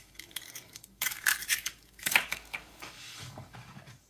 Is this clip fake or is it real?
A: fake